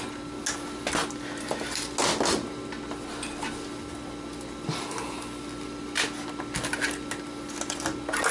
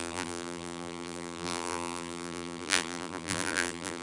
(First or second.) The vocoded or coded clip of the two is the second